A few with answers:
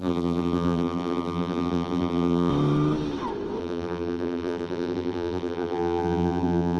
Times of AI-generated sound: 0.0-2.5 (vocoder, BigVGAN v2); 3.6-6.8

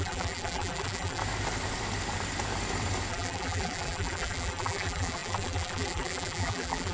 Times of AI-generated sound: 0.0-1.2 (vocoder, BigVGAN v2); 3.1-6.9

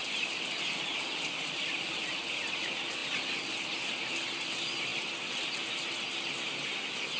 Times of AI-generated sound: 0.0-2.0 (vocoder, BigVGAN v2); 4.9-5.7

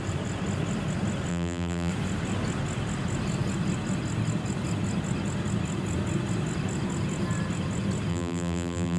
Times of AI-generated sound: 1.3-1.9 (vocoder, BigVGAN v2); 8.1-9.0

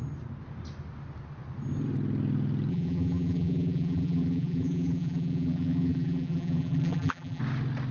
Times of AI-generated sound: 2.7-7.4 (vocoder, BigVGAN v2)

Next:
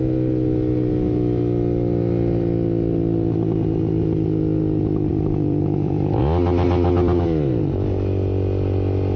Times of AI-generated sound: 5.1-6.2 (vocoder, BigVGAN v2)